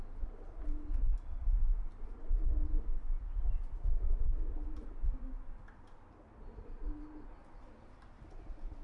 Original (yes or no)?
yes